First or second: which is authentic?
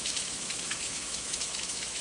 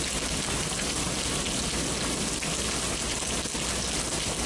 second